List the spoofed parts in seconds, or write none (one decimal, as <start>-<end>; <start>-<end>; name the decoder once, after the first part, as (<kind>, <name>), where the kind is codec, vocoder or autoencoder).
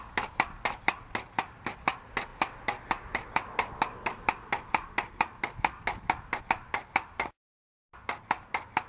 none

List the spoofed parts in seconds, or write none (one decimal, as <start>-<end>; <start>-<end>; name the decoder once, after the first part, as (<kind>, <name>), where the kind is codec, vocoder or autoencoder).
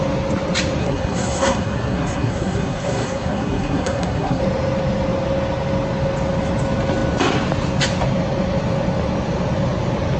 0.8-4.4 (codec, SNAC)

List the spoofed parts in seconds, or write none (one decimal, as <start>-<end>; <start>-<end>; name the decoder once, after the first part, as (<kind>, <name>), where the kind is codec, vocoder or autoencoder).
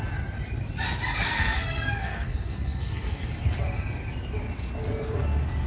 1.2-3.3 (codec, SNAC)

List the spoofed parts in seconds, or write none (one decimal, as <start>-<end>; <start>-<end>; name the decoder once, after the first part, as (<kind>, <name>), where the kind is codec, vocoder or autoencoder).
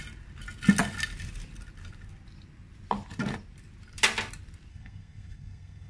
4.7-5.9 (codec, SNAC)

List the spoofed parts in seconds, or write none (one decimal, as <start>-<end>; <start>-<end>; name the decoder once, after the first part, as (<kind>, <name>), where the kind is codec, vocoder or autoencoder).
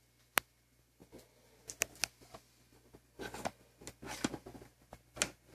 none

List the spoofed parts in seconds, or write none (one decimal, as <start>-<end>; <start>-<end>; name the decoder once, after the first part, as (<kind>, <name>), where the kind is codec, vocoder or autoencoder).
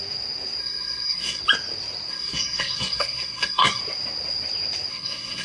0.6-1.4 (codec, SNAC); 2.1-3.8; 4.9-5.4